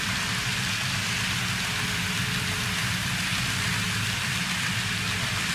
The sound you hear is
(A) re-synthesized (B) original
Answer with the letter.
B